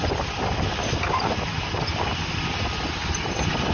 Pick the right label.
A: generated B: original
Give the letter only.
B